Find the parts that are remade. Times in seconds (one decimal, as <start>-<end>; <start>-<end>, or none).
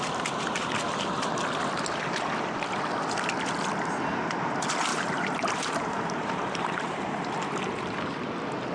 4.9-8.0